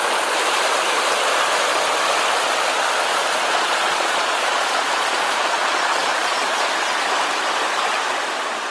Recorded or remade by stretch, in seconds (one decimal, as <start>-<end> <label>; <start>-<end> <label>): 0.0-3.1 recorded; 3.1-6.7 remade; 6.7-8.7 recorded